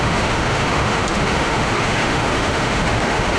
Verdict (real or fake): fake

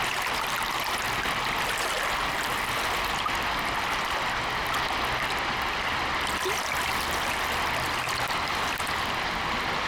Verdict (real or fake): real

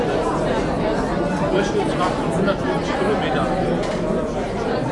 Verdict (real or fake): real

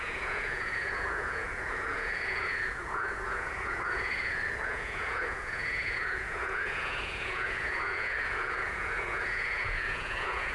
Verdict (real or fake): fake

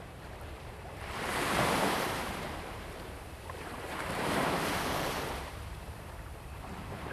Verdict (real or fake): fake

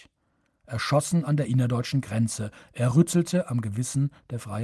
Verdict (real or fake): real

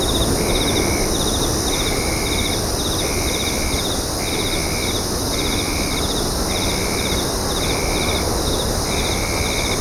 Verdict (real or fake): real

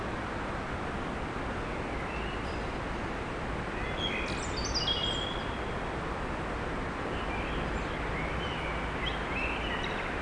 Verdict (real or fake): real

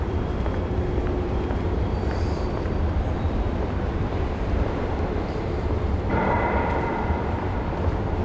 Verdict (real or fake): fake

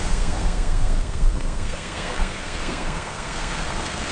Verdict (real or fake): fake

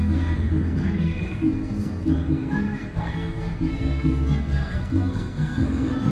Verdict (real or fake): fake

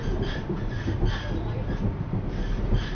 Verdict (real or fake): real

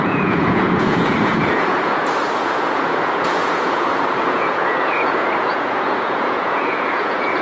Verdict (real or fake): fake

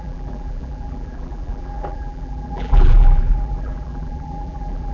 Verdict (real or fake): fake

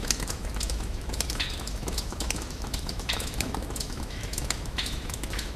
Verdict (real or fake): fake